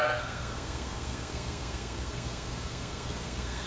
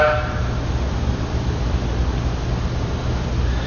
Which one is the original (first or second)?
second